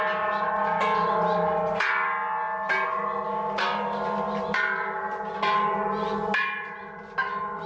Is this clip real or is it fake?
real